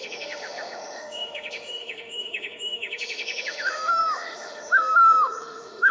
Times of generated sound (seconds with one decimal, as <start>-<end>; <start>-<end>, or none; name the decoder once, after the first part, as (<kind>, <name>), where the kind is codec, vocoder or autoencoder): 0.0-5.9 (autoencoder, DAC-VAE)